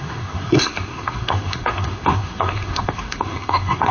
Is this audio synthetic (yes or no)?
yes